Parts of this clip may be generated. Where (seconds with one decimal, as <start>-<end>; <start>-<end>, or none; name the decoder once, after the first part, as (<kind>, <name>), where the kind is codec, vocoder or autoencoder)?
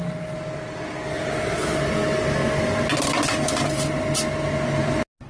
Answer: none